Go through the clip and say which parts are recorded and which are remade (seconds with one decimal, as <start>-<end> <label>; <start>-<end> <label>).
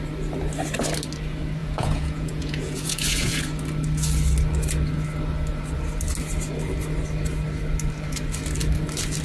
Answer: 0.0-1.6 recorded; 1.6-3.4 remade; 3.4-9.2 recorded